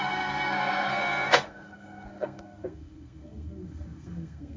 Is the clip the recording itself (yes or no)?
no